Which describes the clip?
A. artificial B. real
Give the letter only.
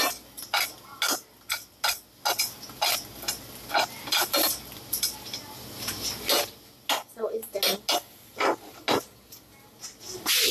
B